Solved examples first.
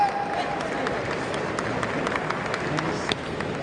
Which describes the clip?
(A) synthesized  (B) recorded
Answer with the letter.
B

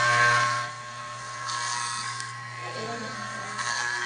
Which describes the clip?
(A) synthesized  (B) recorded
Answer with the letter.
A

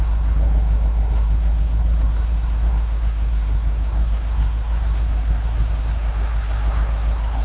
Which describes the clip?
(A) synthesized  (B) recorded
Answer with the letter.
A